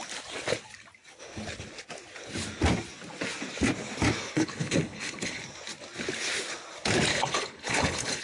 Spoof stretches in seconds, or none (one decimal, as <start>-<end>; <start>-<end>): 4.2-5.4; 7.1-8.2